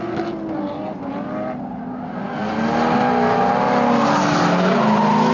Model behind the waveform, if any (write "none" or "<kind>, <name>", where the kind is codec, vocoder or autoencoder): none